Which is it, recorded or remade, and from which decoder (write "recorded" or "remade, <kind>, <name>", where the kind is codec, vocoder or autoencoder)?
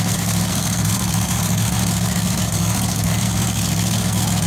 remade, codec, SNAC